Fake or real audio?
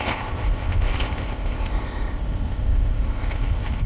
fake